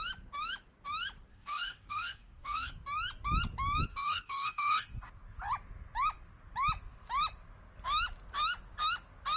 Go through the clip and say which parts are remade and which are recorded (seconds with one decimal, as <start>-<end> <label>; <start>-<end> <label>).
0.0-1.3 recorded; 1.3-2.7 remade; 2.7-3.9 recorded; 3.9-5.1 remade; 5.1-9.4 recorded